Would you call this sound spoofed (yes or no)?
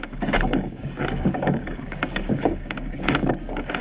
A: yes